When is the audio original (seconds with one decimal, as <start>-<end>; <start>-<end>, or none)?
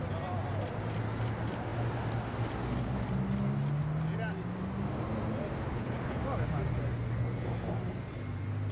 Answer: 0.0-5.7; 6.2-8.7